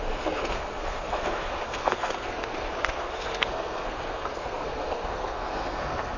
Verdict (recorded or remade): remade